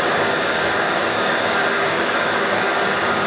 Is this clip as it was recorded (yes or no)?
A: no